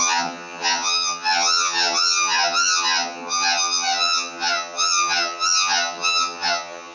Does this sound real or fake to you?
fake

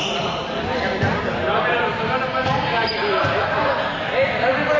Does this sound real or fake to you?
real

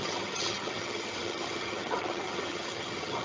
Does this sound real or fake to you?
fake